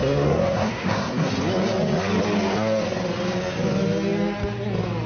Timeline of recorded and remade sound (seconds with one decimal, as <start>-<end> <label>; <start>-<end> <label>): 0.0-1.3 remade; 1.3-5.1 recorded